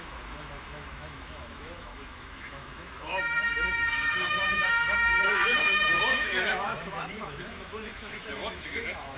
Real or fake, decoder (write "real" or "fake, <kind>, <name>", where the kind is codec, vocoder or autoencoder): fake, autoencoder, DAC-VAE